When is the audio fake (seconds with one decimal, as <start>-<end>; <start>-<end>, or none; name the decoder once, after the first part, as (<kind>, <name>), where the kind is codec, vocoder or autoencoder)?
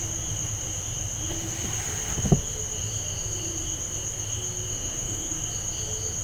4.7-5.3 (autoencoder, DAC-VAE)